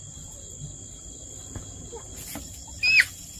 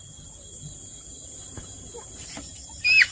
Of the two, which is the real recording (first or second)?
first